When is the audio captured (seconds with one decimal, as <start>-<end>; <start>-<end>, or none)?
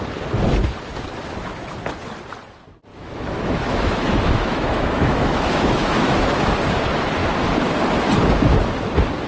0.0-2.9; 6.4-9.3